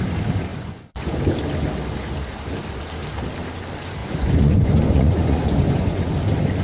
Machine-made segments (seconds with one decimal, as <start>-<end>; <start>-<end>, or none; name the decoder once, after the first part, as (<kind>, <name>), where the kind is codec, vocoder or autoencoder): 0.5-1.2 (vocoder, Vocos); 4.0-6.1